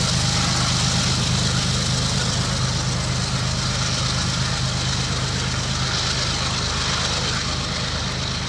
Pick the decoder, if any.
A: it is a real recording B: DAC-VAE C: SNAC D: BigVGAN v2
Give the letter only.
A